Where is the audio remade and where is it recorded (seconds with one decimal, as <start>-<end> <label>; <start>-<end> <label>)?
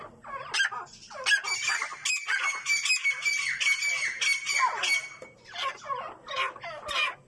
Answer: 0.0-7.3 recorded